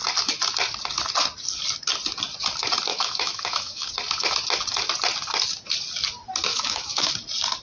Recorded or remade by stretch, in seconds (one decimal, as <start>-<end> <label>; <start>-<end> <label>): 0.0-2.9 recorded; 2.9-3.9 remade; 3.9-6.5 recorded; 6.5-7.1 remade; 7.1-7.6 recorded